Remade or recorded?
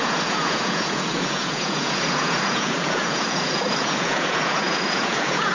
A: remade